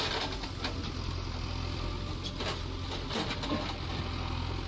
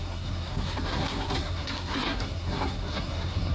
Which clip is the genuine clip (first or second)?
first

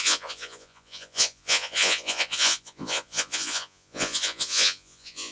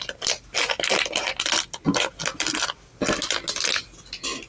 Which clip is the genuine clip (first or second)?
second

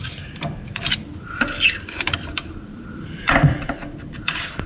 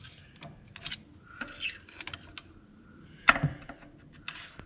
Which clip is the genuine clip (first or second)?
second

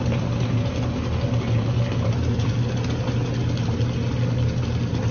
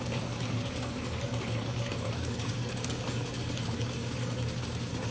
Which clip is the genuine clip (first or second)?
first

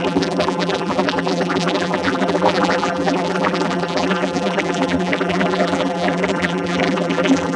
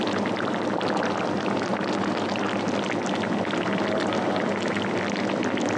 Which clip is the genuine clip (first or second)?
second